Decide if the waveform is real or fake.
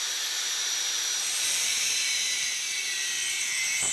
fake